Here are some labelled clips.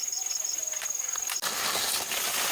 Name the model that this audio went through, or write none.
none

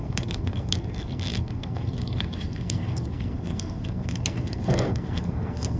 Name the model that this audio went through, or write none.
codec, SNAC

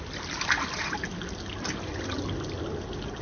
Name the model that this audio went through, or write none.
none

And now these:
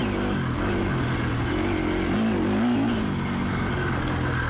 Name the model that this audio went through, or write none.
none